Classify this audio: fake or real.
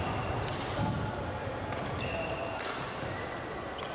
fake